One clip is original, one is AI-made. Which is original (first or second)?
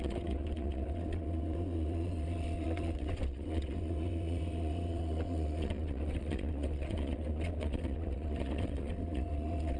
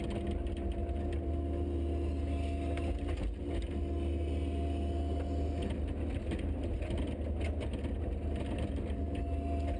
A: second